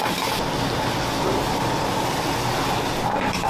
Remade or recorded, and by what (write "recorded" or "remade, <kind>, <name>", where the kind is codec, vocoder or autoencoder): recorded